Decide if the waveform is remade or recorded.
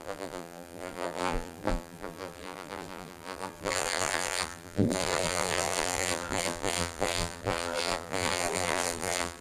remade